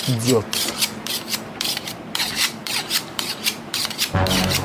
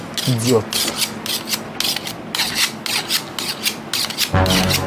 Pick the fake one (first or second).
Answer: first